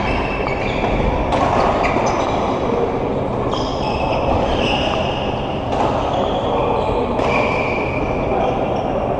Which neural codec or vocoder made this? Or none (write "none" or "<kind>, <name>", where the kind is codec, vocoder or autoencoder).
none